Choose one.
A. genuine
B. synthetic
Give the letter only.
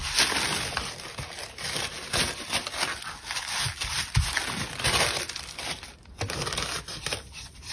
A